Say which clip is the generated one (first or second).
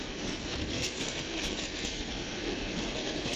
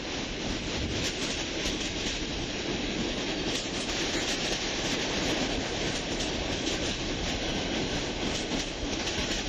first